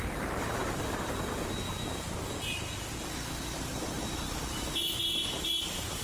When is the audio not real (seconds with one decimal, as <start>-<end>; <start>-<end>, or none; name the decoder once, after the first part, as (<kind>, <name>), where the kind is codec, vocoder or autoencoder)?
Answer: none